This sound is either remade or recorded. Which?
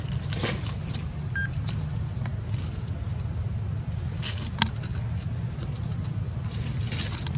recorded